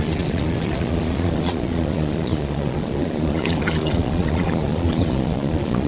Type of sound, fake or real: fake